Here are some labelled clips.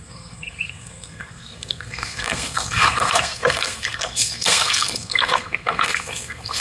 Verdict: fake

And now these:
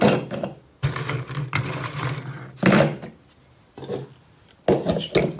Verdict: real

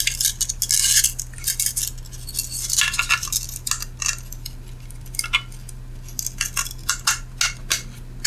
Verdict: real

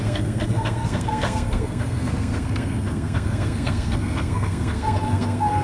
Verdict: fake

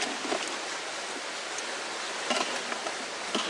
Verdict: real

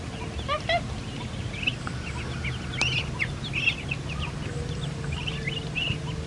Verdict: real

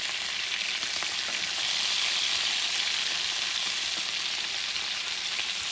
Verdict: real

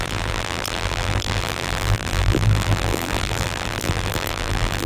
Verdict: fake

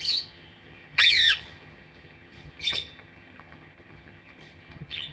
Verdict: fake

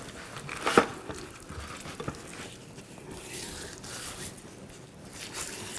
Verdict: real